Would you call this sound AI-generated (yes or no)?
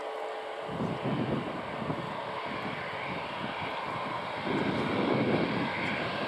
no